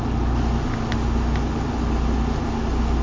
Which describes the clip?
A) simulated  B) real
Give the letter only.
B